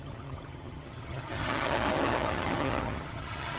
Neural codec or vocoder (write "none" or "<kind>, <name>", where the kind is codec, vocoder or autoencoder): vocoder, HiFi-GAN